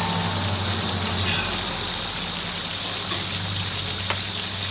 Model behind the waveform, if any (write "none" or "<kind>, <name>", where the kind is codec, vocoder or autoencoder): none